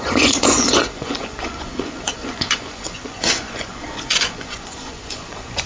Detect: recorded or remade remade